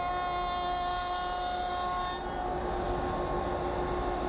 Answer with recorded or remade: recorded